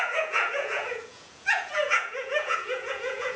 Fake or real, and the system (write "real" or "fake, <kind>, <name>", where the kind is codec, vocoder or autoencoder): fake, vocoder, Vocos